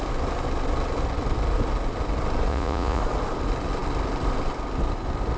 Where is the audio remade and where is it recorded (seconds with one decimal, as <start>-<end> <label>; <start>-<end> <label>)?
0.0-2.5 recorded; 2.5-3.0 remade; 3.0-5.4 recorded